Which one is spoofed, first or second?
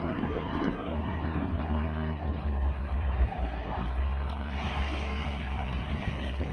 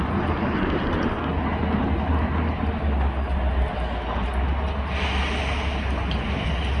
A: first